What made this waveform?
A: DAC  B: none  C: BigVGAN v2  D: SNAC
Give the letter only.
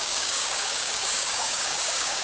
A